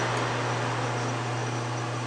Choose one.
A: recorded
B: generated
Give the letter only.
A